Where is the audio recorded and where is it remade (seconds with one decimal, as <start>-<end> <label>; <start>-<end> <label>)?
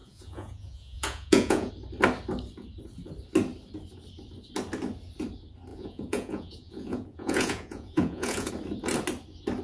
0.0-1.7 remade; 1.7-5.7 recorded; 5.7-8.5 remade; 8.5-9.6 recorded